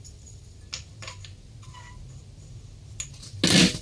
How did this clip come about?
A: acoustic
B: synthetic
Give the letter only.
A